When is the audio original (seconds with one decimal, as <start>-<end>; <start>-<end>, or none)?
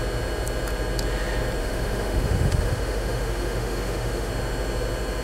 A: 0.0-1.6; 4.3-5.2